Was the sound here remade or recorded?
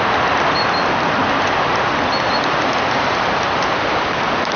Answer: recorded